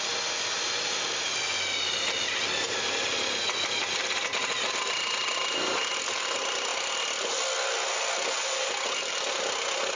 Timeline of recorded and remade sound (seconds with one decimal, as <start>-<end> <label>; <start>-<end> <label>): 0.0-10.0 recorded